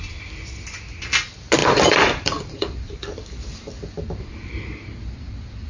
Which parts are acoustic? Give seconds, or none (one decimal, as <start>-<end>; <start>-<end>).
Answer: 0.0-1.6; 4.5-5.7